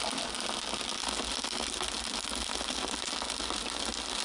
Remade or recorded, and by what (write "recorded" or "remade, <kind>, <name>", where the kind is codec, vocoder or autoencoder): recorded